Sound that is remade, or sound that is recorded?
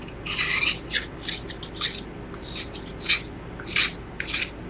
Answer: recorded